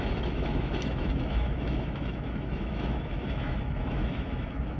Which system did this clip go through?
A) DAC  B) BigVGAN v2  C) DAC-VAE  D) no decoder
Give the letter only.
C